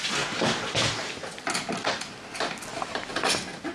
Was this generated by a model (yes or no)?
no